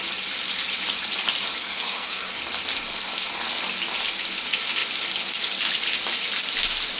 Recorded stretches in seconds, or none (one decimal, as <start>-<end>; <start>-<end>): 0.0-1.6; 2.4-7.0

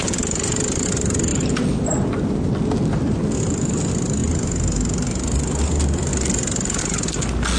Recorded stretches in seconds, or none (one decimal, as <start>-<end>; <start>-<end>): 0.0-7.6

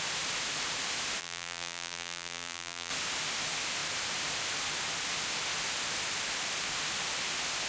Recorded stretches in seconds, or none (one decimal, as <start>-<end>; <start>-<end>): 0.0-1.2; 2.9-7.7

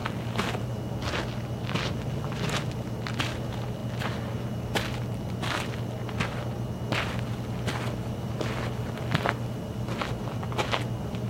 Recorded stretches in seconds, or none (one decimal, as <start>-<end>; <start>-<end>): 0.0-11.3